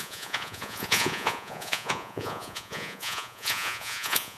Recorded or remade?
remade